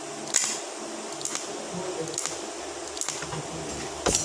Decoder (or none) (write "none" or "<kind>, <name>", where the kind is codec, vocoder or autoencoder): none